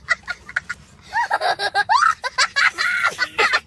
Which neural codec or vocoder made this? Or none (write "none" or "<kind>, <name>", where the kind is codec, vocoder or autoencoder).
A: none